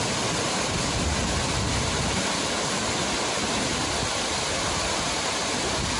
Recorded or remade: recorded